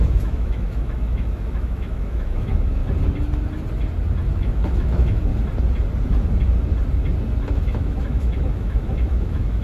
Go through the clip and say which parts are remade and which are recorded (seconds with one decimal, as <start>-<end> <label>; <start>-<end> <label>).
0.0-2.8 remade; 2.8-4.3 recorded; 4.3-5.3 remade; 5.3-7.5 recorded; 7.5-9.6 remade